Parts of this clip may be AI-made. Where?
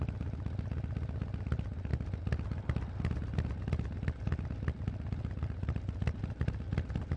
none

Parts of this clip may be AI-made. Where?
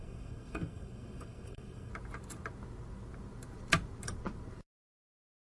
0.0-1.9 (codec, SNAC)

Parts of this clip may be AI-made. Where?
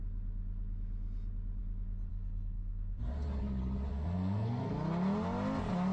2.1-3.0 (codec, SNAC); 3.9-4.7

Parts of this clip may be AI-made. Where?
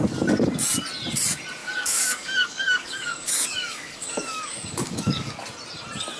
1.6-5.3 (codec, DAC)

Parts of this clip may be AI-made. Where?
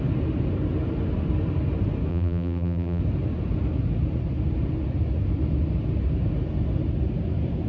2.1-3.0 (vocoder, BigVGAN v2)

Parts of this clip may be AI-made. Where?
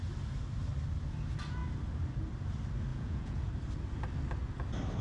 2.9-3.5 (vocoder, Vocos)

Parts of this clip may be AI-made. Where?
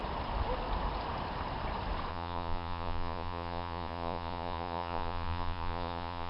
2.1-6.3 (vocoder, Vocos)